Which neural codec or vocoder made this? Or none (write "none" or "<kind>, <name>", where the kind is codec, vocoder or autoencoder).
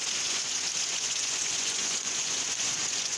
vocoder, Vocos